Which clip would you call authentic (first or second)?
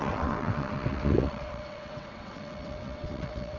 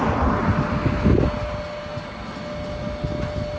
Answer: second